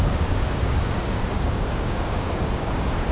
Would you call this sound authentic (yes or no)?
no